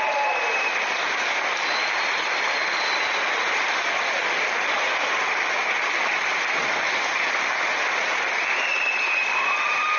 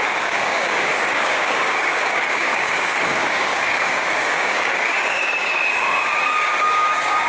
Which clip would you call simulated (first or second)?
second